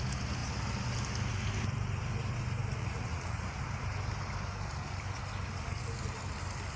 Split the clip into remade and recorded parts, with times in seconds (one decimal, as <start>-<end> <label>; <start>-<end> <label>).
0.0-2.8 recorded; 2.8-3.6 remade; 3.6-6.8 recorded